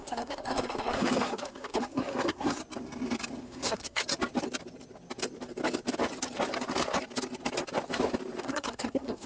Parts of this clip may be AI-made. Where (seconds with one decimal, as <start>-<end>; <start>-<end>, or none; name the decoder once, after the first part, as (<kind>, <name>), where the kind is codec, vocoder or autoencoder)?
0.0-2.6 (codec, SNAC); 3.4-4.0; 8.4-9.3